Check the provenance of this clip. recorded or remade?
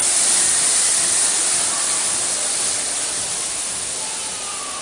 recorded